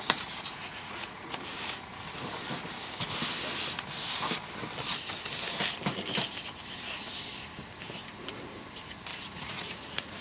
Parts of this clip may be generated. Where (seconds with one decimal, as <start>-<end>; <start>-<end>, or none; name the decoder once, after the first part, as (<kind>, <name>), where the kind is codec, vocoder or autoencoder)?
0.6-1.4 (vocoder, Vocos); 9.1-10.2